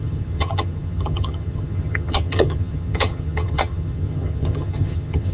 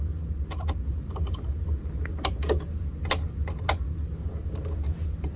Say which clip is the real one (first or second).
second